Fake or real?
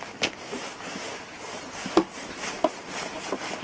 real